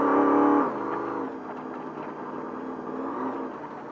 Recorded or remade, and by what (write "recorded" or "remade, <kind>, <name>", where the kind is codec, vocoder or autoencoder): recorded